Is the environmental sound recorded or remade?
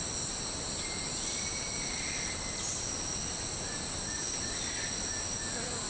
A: recorded